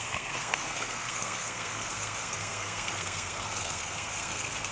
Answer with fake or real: fake